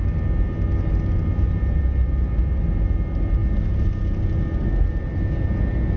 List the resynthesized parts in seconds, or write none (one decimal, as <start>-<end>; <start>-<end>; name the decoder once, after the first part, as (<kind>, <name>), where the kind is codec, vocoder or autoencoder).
none